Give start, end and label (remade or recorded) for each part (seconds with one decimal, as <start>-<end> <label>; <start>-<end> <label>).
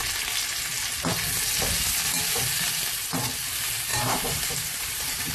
0.0-3.9 recorded; 3.9-5.3 remade